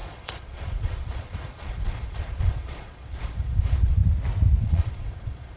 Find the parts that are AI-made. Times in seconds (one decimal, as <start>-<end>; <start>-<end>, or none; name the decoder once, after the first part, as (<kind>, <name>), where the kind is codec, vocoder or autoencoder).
0.0-4.0 (vocoder, Vocos); 4.6-5.6